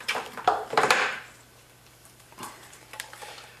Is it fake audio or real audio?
fake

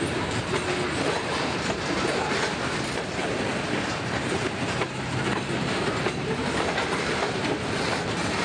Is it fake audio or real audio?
fake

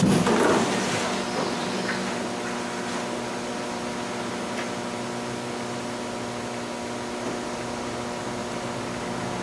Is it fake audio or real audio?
real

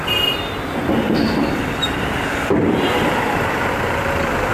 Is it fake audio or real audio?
fake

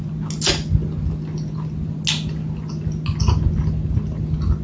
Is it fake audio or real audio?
real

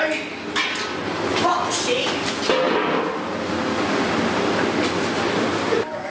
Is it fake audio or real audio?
real